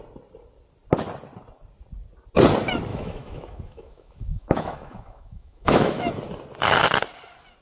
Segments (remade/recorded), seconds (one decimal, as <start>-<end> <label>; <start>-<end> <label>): 0.0-2.9 recorded; 2.9-6.1 remade; 6.1-7.6 recorded